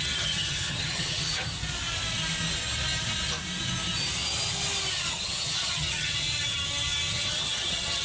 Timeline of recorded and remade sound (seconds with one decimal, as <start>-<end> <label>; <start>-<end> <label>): 0.0-1.6 remade; 1.6-4.9 recorded; 4.9-6.3 remade; 6.3-7.1 recorded; 7.1-8.0 remade

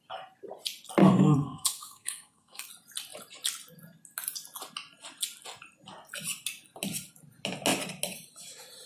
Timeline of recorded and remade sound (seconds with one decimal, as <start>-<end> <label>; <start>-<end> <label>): 0.0-1.0 recorded; 1.0-2.7 remade; 2.7-8.9 recorded

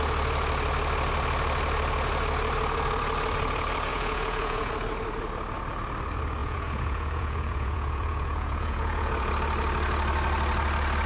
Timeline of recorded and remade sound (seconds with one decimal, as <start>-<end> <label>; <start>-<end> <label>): 0.0-3.9 recorded; 3.9-4.7 remade; 4.7-6.4 recorded; 6.4-9.3 remade; 9.3-11.1 recorded